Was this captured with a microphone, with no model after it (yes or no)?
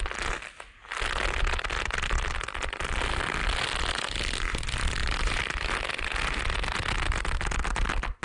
yes